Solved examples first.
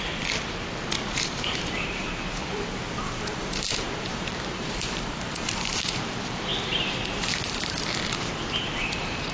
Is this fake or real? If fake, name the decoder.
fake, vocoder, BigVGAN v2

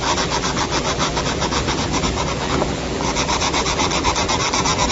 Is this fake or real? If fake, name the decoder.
fake, vocoder, BigVGAN v2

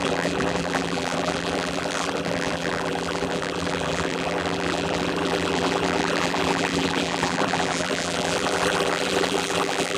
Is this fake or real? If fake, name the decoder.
fake, vocoder, BigVGAN v2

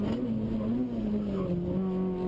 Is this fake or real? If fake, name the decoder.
real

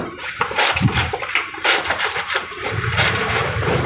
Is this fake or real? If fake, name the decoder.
fake, vocoder, BigVGAN v2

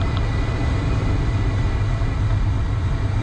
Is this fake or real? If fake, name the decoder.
real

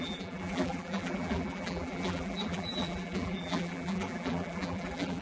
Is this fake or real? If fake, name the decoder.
fake, vocoder, BigVGAN v2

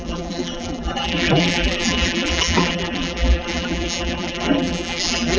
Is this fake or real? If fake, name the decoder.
fake, vocoder, BigVGAN v2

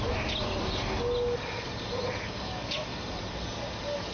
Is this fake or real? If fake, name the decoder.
real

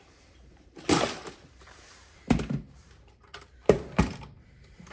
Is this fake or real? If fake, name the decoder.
fake, vocoder, BigVGAN v2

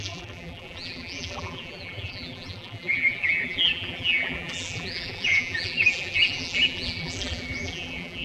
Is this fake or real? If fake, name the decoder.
fake, vocoder, BigVGAN v2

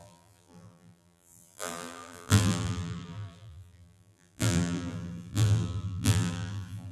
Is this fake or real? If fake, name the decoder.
fake, vocoder, BigVGAN v2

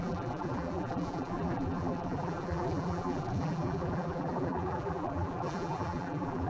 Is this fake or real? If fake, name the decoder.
fake, vocoder, BigVGAN v2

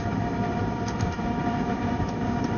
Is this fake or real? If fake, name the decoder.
fake, vocoder, BigVGAN v2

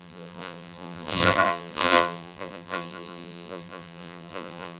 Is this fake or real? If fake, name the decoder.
fake, vocoder, BigVGAN v2